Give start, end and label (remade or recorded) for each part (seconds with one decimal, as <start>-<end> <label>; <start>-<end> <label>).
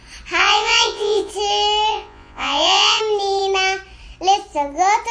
0.0-0.4 recorded; 0.4-1.3 remade; 1.3-1.9 recorded; 1.9-3.0 remade; 3.0-5.1 recorded